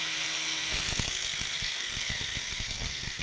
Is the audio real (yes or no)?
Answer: no